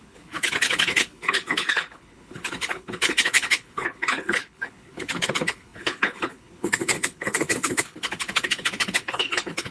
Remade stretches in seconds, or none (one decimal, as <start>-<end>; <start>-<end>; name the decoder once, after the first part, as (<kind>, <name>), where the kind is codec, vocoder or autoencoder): 0.0-9.7 (codec, HILCodec)